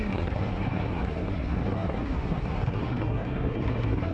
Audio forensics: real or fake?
fake